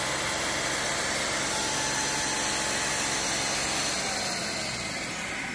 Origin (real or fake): real